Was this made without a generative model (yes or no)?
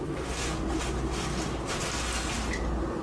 yes